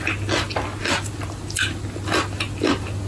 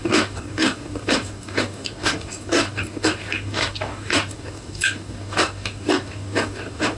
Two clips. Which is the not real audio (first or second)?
second